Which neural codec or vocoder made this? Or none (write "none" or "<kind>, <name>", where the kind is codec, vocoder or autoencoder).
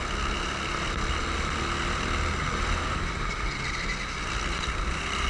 none